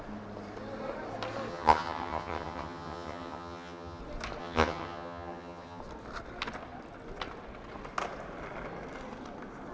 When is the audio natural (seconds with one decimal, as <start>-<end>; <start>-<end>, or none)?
0.0-1.5; 4.0-4.4; 5.8-9.7